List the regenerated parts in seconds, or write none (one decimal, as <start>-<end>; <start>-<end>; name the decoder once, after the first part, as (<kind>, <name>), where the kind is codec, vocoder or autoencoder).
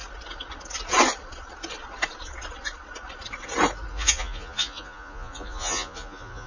3.9-6.5 (vocoder, Vocos)